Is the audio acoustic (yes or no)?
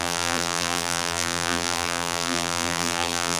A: no